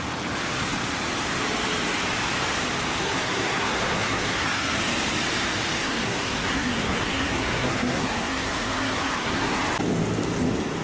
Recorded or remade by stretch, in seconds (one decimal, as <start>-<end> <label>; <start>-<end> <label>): 0.0-3.0 recorded; 3.0-4.8 remade; 4.8-5.8 recorded; 5.8-9.6 remade; 9.6-10.8 recorded